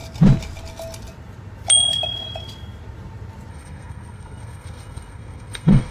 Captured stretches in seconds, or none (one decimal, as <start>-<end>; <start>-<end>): 0.0-3.5